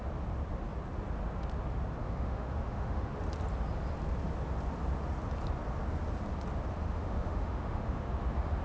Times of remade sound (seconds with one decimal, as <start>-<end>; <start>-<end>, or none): 2.0-3.1; 6.8-8.6